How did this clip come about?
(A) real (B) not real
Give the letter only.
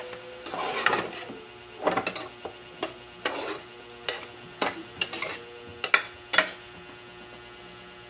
A